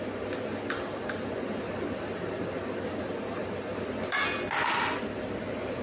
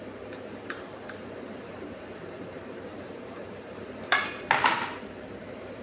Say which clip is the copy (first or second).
second